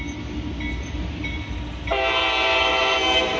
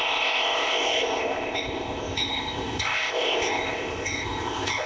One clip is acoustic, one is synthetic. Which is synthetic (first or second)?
second